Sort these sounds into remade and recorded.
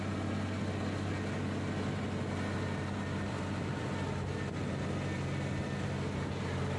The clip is recorded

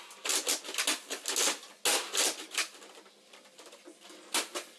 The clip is recorded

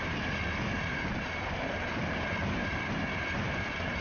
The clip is remade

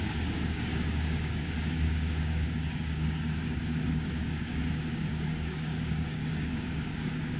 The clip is remade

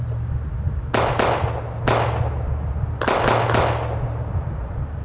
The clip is recorded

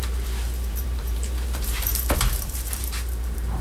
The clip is remade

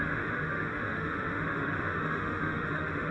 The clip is remade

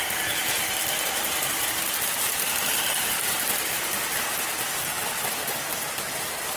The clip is recorded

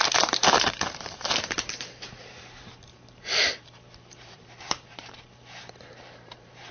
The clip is remade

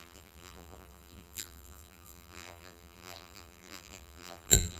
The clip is remade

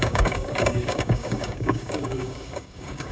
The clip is remade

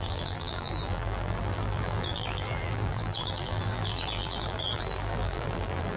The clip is remade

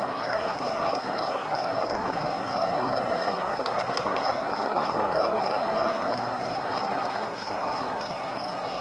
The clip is remade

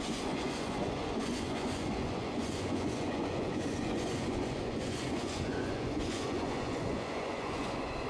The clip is remade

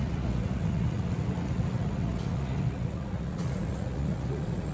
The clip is remade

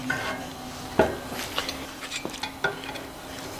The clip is recorded